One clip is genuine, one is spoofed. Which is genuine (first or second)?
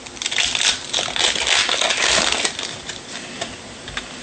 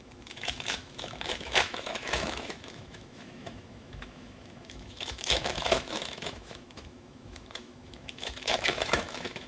first